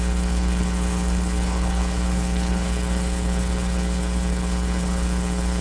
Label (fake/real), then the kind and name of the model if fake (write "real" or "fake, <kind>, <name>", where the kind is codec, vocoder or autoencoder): fake, codec, HILCodec